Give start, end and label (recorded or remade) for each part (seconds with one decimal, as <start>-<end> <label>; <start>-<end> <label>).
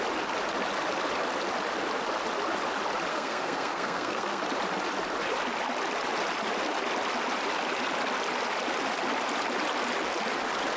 0.0-3.1 recorded; 3.1-4.4 remade; 4.4-10.8 recorded